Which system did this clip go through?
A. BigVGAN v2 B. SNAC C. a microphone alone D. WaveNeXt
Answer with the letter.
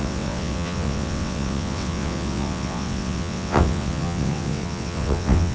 D